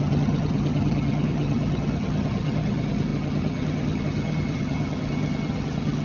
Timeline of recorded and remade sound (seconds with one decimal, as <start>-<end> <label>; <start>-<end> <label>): 0.0-6.0 remade